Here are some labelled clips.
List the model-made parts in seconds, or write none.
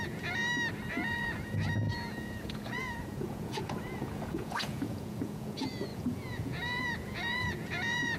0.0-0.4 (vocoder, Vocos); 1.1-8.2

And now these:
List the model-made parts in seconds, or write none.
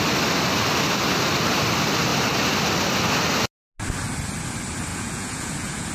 4.9-5.9 (vocoder, Vocos)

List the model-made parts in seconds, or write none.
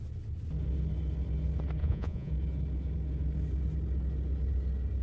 1.8-2.3 (vocoder, Vocos)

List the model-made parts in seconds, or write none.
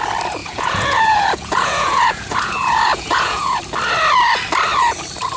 0.4-3.6 (vocoder, Vocos)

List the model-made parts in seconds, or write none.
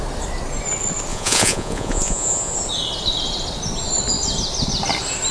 1.1-2.5 (vocoder, Vocos)